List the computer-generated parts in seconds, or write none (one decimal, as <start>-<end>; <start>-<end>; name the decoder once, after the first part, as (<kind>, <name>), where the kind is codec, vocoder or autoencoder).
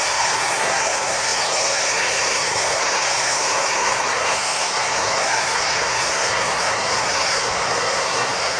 0.0-8.6 (codec, SNAC)